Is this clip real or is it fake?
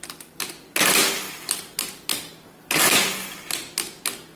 real